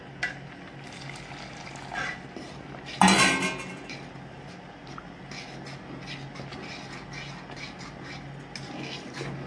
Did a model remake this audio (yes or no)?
no